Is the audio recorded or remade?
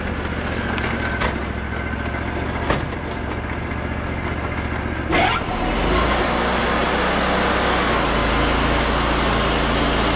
recorded